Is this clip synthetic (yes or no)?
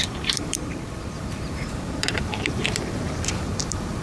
yes